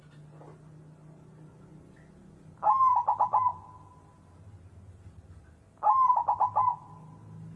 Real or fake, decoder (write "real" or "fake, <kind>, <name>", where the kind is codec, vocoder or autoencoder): real